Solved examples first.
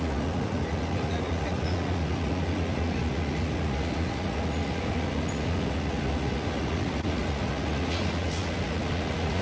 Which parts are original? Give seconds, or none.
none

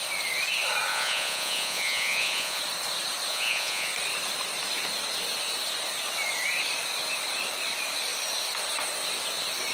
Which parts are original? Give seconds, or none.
0.0-0.9; 2.6-3.3; 3.9-9.7

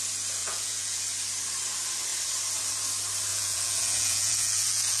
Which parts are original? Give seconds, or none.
0.0-0.4; 1.0-3.3

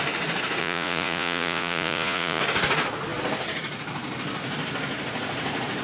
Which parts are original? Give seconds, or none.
0.0-0.6; 2.4-5.8

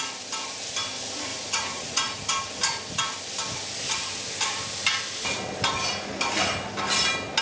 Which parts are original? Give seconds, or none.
0.0-1.3; 2.2-7.4

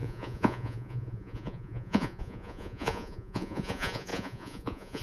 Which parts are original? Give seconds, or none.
none

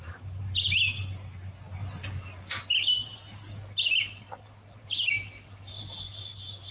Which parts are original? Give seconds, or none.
0.0-6.7